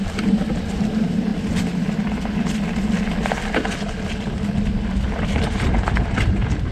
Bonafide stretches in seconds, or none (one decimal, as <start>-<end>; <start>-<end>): 1.3-5.3